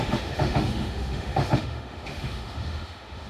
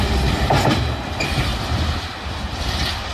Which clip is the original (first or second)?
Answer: second